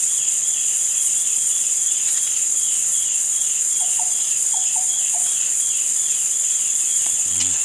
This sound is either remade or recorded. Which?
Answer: remade